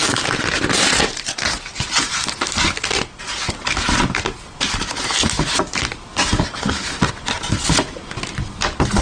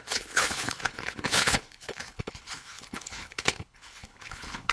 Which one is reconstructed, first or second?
second